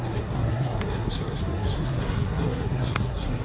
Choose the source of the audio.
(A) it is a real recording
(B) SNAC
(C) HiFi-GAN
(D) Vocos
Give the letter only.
B